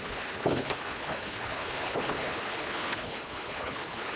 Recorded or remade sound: remade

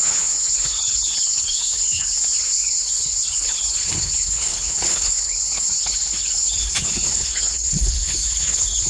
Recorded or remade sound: remade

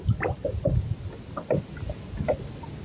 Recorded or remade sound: recorded